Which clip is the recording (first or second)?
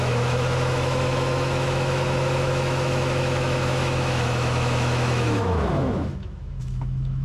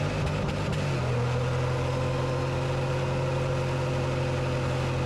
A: second